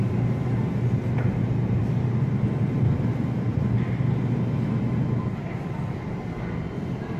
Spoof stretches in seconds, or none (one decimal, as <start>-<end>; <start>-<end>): 1.8-4.1